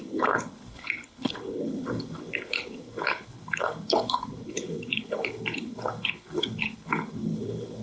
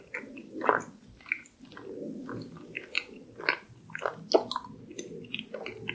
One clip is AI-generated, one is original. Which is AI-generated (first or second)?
first